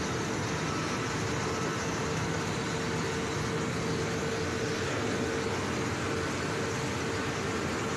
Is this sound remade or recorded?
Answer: recorded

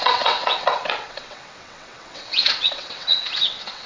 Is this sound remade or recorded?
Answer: remade